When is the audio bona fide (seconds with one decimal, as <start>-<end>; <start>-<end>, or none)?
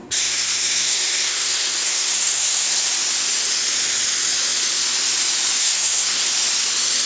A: 2.8-5.6; 6.3-7.1